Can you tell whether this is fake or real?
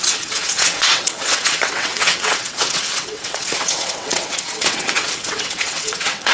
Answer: fake